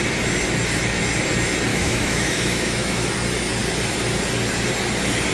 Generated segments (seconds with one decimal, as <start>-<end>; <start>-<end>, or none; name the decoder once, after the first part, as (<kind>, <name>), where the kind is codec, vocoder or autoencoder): 1.7-3.1 (autoencoder, DAC-VAE)